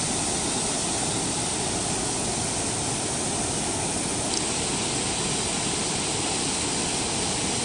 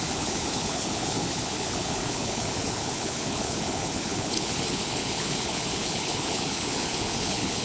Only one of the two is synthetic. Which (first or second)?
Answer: second